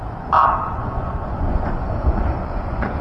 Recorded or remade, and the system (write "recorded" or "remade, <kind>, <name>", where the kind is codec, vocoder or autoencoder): remade, vocoder, Vocos